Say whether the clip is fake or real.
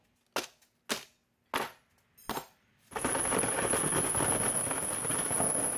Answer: real